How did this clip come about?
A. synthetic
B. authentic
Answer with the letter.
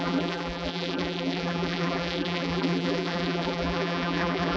A